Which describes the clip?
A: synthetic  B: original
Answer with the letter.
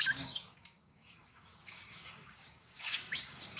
A